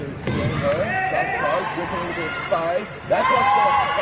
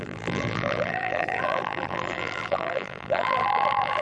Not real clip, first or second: second